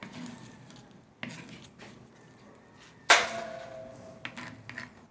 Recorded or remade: recorded